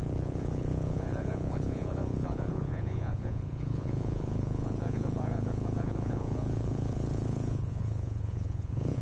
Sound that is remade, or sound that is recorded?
remade